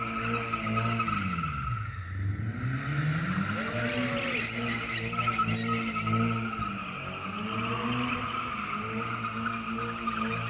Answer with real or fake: real